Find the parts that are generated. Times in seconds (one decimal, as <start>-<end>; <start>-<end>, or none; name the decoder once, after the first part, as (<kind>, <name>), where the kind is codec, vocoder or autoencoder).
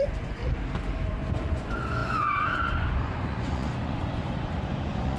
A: 0.0-0.4 (vocoder, Vocos); 1.1-5.2